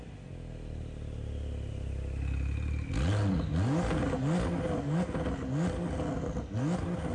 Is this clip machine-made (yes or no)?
no